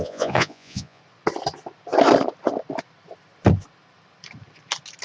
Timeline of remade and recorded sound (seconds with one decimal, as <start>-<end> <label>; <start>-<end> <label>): 0.0-1.0 remade; 1.0-5.0 recorded